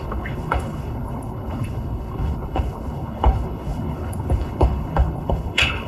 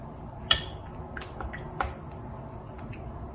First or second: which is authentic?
second